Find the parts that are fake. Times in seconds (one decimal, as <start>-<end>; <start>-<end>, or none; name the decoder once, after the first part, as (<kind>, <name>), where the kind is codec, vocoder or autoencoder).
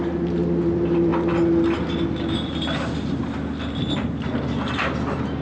none